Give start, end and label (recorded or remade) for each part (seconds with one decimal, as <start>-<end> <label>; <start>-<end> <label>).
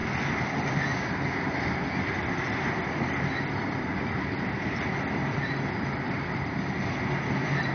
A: 0.0-7.7 recorded